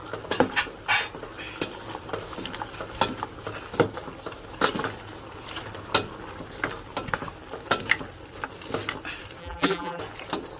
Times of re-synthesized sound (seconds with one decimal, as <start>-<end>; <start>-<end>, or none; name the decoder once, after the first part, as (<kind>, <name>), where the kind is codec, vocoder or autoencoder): 9.4-10.0 (vocoder, BigVGAN v2)

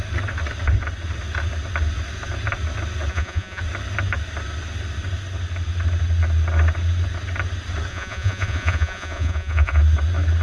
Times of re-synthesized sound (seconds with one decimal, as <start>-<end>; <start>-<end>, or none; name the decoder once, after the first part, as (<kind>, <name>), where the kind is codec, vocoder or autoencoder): 3.1-3.6 (vocoder, Vocos); 7.9-9.8

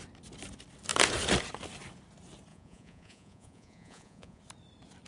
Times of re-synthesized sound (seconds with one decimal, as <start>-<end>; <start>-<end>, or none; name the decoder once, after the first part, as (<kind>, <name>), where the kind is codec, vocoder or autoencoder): 2.5-4.4 (vocoder, Vocos)

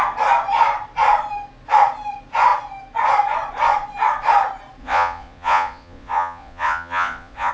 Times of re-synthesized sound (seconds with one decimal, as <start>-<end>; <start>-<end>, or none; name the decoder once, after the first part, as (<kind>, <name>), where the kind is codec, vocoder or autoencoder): 4.8-7.5 (vocoder, Vocos)

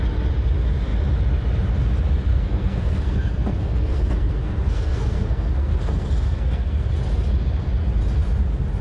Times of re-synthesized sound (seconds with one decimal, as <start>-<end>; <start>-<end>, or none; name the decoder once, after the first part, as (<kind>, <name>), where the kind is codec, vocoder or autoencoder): 2.3-6.9 (codec, SNAC)

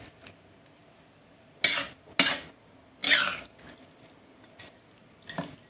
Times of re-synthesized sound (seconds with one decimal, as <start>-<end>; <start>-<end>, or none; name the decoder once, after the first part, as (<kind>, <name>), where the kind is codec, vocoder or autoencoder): none

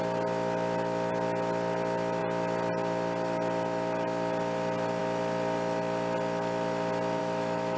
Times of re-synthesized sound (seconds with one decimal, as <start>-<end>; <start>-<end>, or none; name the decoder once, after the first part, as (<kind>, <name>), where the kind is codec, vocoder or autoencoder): 7.2-7.8 (autoencoder, DAC-VAE)